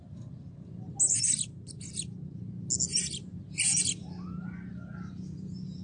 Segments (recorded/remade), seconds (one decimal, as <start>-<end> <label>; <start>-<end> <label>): 0.0-5.8 recorded